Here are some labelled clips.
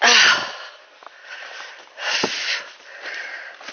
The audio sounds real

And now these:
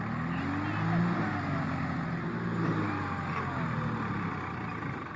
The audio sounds real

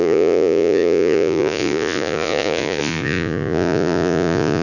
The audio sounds fake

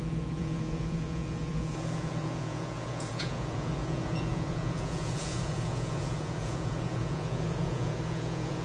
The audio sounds fake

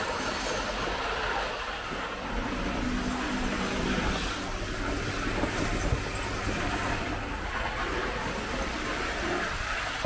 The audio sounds real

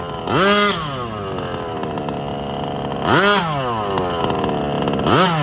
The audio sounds real